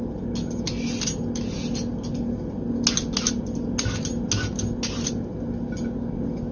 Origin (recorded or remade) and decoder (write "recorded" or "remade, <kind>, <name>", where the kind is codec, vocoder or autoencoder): recorded